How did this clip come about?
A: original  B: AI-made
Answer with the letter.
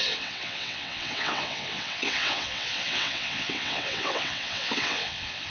B